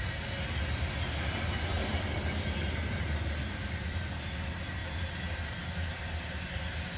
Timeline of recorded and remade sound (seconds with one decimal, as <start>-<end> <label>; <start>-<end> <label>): 0.0-7.0 recorded